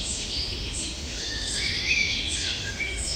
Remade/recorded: remade